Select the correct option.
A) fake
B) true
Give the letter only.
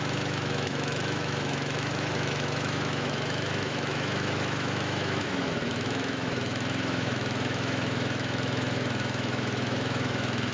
A